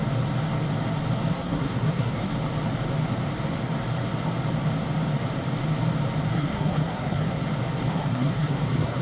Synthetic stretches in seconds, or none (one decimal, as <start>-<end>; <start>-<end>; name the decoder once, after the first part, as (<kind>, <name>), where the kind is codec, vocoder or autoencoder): 1.3-2.3 (codec, SNAC); 6.3-7.3; 7.9-9.0